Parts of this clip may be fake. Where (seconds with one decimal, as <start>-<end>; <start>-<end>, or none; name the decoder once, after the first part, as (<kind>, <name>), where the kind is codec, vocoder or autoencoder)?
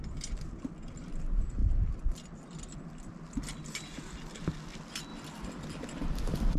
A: none